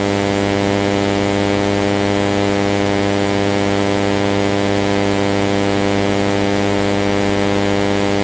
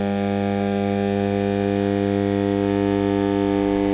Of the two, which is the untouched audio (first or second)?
first